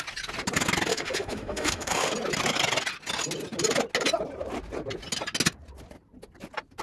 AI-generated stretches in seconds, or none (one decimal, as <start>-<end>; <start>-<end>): 0.9-2.1